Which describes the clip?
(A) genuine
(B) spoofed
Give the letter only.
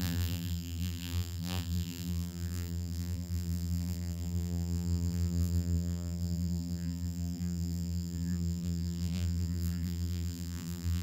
B